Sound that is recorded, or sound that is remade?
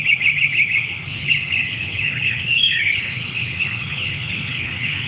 remade